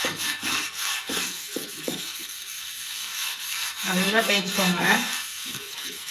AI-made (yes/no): yes